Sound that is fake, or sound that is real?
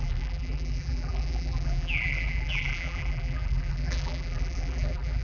fake